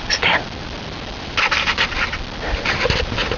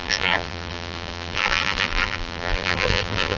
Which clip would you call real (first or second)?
first